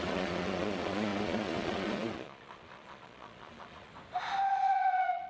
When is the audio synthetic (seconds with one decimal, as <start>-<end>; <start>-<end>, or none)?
0.0-3.9; 4.5-5.3